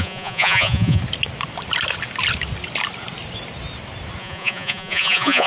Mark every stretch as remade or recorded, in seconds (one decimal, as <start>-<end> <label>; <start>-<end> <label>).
0.0-1.0 remade; 1.0-4.2 recorded; 4.2-5.5 remade

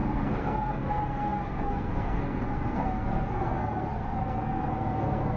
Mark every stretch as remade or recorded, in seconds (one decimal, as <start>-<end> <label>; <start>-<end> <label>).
0.0-5.4 remade

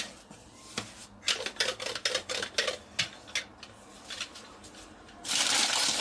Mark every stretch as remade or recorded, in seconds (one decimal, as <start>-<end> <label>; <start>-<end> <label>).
0.0-1.0 remade; 1.0-3.5 recorded; 3.5-6.0 remade